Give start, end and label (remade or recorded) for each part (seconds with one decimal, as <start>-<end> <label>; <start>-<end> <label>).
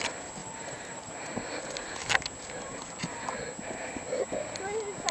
0.0-0.4 recorded; 0.4-1.1 remade; 1.1-5.1 recorded